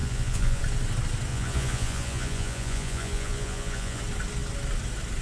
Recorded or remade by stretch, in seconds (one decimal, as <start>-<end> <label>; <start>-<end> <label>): 0.0-0.6 remade; 0.6-1.3 recorded; 1.3-4.0 remade; 4.0-5.2 recorded